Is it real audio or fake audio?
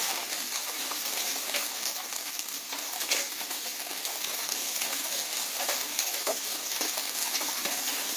fake